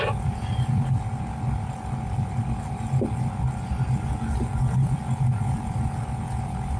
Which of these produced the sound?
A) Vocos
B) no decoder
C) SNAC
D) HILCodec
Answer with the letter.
B